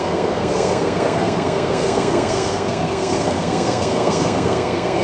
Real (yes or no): no